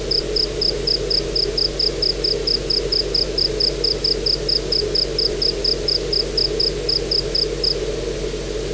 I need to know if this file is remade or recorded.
recorded